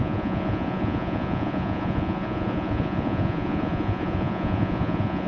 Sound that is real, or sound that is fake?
fake